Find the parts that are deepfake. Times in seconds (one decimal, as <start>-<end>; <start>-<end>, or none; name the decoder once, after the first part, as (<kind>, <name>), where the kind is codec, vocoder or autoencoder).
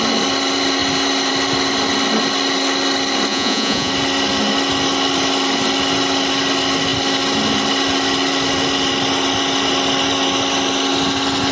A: 3.3-3.9 (vocoder, Vocos)